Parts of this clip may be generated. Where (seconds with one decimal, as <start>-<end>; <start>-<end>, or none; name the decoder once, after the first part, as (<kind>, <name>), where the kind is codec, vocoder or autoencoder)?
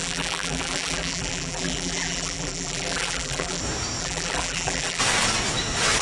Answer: 0.0-3.6 (vocoder, BigVGAN v2); 4.0-5.0